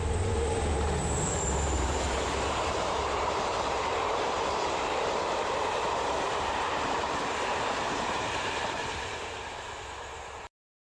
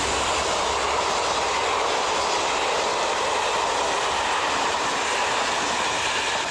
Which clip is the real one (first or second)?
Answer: second